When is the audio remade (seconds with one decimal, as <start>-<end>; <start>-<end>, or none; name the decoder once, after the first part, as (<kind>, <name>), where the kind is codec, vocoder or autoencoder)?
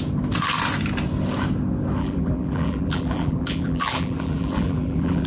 2.0-5.3 (vocoder, BigVGAN v2)